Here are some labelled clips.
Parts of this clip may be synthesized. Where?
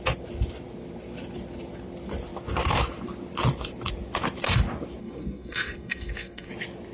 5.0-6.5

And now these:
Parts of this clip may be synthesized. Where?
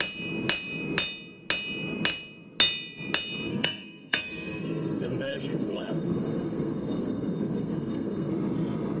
3.5-8.3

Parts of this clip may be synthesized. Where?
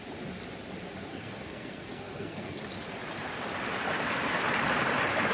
1.1-2.6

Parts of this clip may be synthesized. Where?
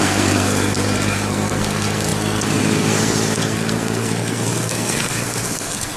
0.0-6.0